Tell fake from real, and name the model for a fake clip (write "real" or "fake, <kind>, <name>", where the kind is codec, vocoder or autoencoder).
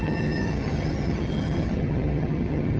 fake, vocoder, HiFi-GAN